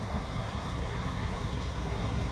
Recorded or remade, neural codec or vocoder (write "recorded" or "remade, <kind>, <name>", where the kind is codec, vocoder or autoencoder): remade, codec, SNAC